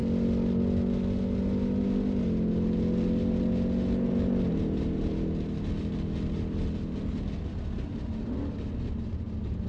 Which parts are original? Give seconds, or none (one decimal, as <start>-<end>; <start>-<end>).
0.0-9.7